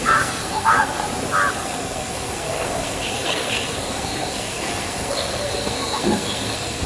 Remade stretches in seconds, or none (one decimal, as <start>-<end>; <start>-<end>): 0.0-1.0; 1.5-6.9